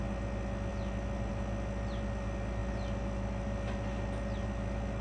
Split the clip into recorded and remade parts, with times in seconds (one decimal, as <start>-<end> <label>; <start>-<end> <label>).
0.0-5.0 recorded